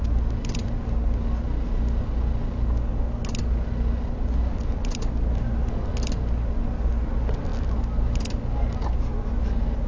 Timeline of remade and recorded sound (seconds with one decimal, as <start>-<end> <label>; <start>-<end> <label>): 0.0-9.9 recorded

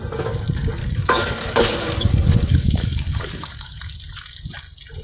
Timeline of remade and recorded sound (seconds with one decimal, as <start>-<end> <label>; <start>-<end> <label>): 0.0-0.8 recorded; 0.8-3.8 remade; 3.8-5.0 recorded

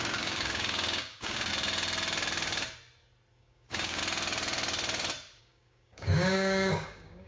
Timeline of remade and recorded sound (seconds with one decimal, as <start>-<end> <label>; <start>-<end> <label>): 0.0-1.5 remade; 1.5-3.4 recorded; 3.4-4.0 remade; 4.0-5.4 recorded; 5.4-7.3 remade